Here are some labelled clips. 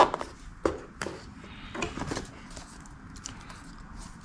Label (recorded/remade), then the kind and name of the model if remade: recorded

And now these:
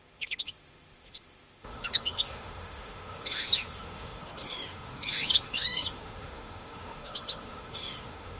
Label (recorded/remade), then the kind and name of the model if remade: remade, autoencoder, DAC-VAE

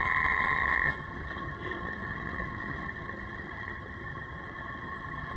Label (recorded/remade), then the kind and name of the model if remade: remade, vocoder, HiFi-GAN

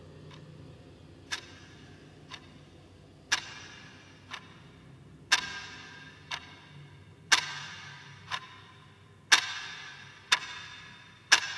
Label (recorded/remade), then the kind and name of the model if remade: recorded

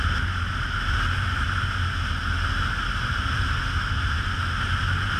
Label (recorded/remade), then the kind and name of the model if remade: recorded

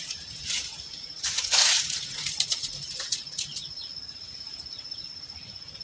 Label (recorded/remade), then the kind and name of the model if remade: remade, vocoder, Vocos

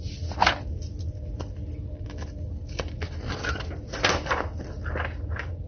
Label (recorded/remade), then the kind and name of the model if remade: recorded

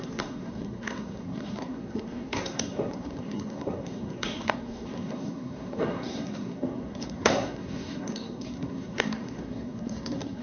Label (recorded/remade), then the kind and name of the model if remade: remade, codec, SNAC